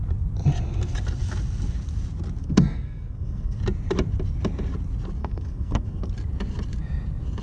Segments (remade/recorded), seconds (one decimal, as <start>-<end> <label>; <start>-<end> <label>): 0.0-2.4 recorded; 2.4-3.6 remade; 3.6-5.2 recorded; 5.2-6.1 remade; 6.1-7.4 recorded